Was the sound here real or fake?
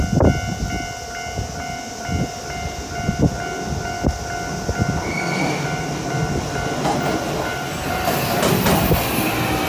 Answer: real